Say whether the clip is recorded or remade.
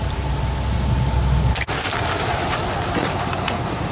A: recorded